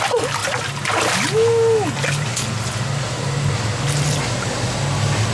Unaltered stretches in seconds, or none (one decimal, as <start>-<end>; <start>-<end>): 0.0-5.3